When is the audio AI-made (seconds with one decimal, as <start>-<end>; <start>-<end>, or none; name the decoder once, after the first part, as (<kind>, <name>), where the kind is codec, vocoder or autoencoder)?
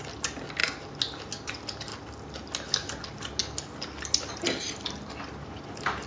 none